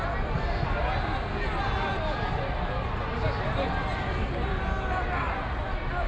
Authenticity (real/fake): real